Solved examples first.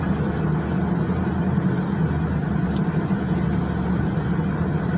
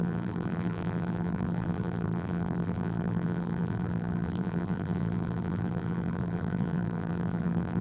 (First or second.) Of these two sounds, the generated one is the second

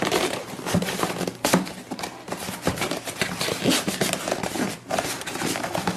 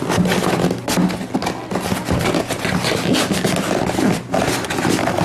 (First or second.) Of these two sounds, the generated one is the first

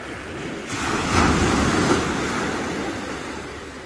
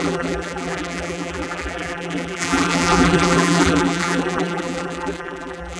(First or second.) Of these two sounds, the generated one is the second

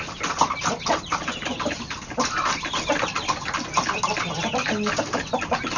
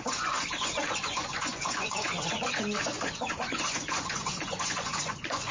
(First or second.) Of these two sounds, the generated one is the second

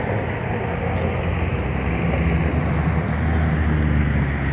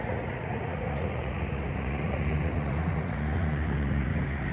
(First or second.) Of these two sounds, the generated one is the second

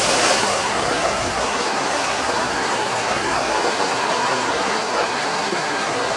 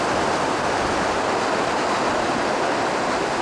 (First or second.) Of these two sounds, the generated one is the first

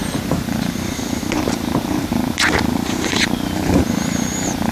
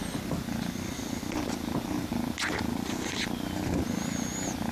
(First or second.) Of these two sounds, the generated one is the first